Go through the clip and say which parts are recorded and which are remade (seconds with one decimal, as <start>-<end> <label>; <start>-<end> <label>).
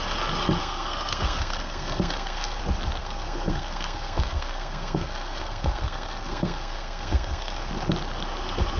0.0-0.6 recorded; 0.6-2.6 remade; 2.6-3.0 recorded; 3.0-7.7 remade; 7.7-8.8 recorded